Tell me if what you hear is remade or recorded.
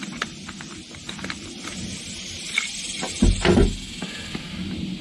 recorded